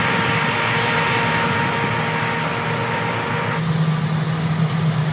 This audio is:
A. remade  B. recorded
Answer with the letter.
B